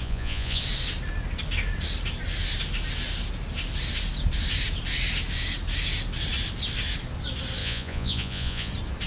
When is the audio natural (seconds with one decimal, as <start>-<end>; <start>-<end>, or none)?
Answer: 0.6-7.6; 8.7-9.1